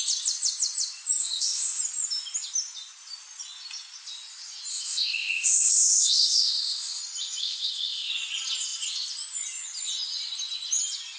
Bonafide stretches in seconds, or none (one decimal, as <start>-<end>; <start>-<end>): 0.0-1.2; 1.8-4.7; 7.0-7.4; 8.1-11.2